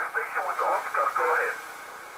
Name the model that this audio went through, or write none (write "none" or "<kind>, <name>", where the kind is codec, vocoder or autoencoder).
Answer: vocoder, Vocos